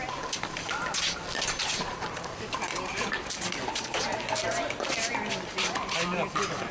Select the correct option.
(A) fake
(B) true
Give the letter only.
B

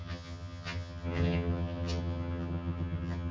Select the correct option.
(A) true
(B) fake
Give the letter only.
B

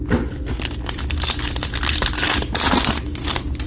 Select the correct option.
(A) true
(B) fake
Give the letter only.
A